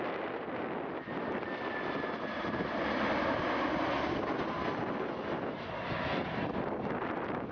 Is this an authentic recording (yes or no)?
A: yes